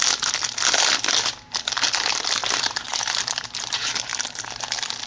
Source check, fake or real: real